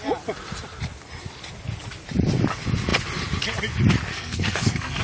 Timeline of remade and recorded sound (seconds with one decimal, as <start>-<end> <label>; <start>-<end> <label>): 0.0-4.1 recorded; 4.1-5.0 remade

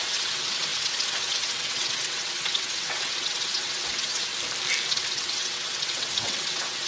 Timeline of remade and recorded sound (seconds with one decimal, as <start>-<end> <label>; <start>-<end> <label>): 0.0-4.3 remade; 4.3-4.9 recorded; 4.9-6.9 remade